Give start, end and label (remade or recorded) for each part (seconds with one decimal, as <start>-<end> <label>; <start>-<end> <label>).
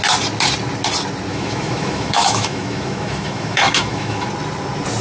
0.0-1.3 recorded; 1.3-4.3 remade; 4.3-5.0 recorded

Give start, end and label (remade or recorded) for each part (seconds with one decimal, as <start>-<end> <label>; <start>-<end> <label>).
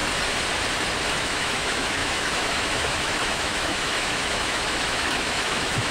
0.0-1.2 recorded; 1.2-5.9 remade